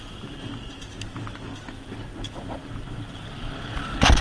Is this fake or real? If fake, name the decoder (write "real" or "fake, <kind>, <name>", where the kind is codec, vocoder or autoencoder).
real